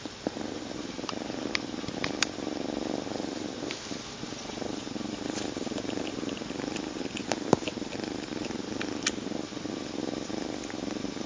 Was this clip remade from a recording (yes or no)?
no